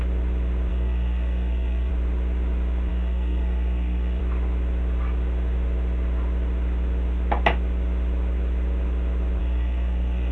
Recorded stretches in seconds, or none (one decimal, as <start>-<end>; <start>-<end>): 0.0-0.7; 1.9-2.9; 4.2-9.4